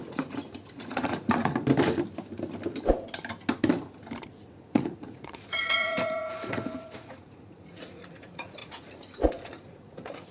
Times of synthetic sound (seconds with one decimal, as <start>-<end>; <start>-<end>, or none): 0.0-1.5; 4.3-10.3